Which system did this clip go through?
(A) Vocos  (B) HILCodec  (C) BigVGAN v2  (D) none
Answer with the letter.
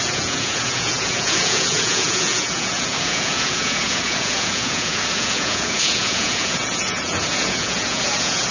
A